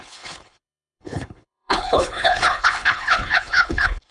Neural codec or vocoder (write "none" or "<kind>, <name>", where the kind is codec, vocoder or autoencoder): codec, HILCodec